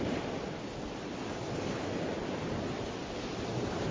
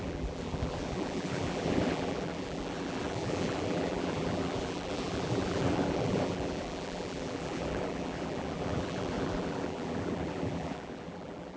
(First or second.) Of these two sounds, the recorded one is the first